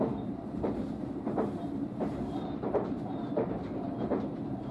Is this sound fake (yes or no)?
yes